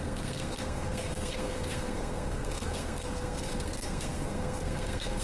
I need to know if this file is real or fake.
fake